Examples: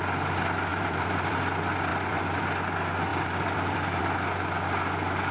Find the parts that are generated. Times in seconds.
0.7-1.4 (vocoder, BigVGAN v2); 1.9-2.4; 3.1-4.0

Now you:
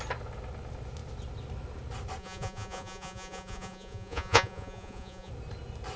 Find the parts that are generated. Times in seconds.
2.2-5.3 (vocoder, Vocos)

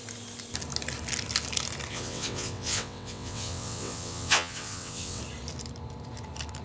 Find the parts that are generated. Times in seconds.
1.9-5.2 (vocoder, WaveNeXt)

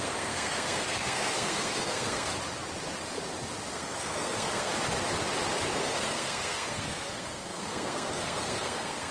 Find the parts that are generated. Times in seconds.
0.0-2.3 (codec, SNAC); 3.7-4.7; 5.8-9.1

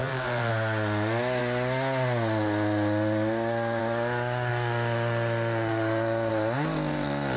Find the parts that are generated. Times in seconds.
0.0-0.5 (vocoder, WaveNeXt)

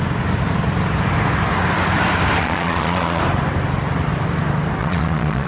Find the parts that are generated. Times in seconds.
2.4-3.2 (vocoder, Vocos); 4.8-5.5